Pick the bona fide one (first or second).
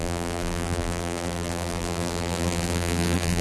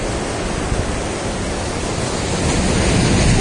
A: second